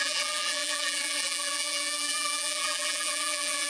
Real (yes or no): no